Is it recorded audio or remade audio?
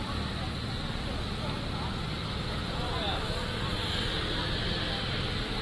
recorded